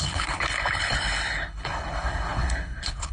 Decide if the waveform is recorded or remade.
remade